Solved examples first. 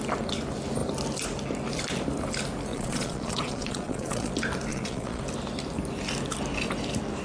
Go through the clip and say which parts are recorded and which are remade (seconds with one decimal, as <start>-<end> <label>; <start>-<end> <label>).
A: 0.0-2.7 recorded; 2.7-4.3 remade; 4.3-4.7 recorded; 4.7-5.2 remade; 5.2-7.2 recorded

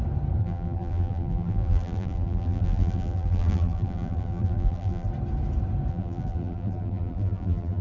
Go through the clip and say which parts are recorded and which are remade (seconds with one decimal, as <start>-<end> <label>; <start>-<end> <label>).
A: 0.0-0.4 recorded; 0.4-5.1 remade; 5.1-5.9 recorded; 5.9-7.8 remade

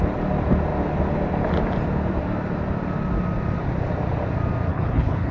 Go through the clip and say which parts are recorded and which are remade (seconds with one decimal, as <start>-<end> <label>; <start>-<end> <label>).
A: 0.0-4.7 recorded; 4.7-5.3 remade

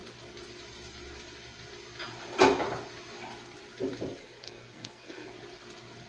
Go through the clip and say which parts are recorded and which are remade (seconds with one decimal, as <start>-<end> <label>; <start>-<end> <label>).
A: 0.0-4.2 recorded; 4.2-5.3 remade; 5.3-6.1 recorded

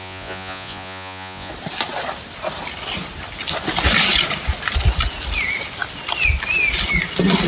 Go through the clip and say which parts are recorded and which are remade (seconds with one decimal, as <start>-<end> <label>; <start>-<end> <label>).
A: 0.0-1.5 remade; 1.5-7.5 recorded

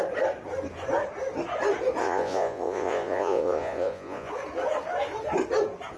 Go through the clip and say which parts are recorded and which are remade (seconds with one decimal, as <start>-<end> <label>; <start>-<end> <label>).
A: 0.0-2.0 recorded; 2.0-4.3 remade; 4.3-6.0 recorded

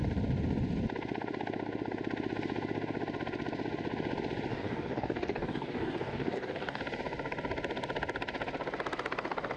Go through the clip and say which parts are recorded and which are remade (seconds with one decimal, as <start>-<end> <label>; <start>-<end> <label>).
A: 0.0-4.5 recorded; 4.5-6.8 remade; 6.8-9.6 recorded

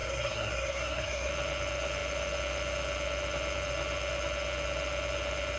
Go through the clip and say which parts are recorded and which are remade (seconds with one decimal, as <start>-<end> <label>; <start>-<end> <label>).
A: 0.0-1.3 remade; 1.3-5.6 recorded